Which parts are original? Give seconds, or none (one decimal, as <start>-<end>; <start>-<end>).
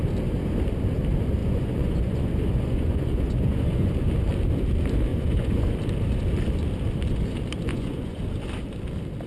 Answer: 0.0-1.4; 3.9-5.1; 5.7-7.7; 8.2-9.3